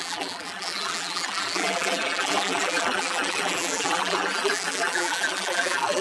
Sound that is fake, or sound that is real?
fake